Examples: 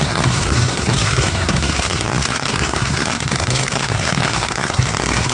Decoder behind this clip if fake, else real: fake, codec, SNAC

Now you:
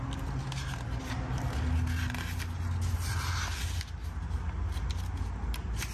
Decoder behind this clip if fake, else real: real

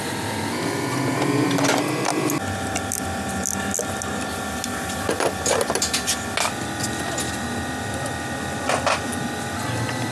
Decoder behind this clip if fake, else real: real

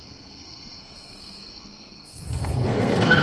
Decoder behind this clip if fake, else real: fake, codec, SNAC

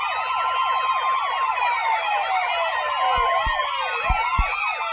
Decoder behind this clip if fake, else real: real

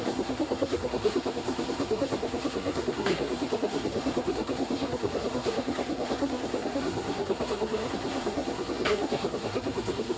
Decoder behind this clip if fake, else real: fake, codec, SNAC